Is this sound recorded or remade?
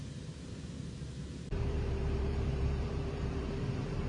remade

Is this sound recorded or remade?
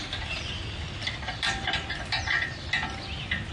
remade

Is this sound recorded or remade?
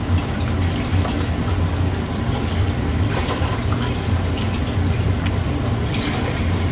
remade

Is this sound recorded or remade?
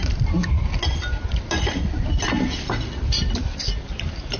recorded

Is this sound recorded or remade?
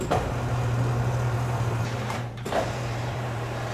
remade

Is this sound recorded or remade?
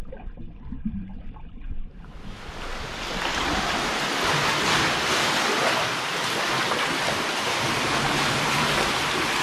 recorded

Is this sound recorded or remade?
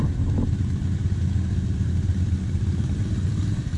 remade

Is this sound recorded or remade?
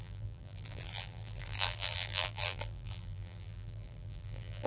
remade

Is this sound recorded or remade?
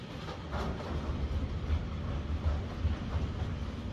recorded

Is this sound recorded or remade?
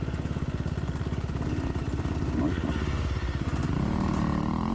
recorded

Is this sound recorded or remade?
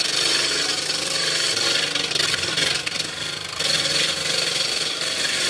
recorded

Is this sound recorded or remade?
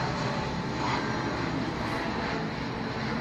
recorded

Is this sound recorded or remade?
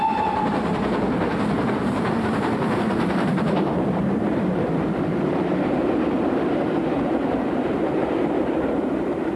remade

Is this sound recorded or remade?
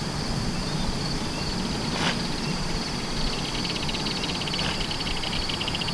remade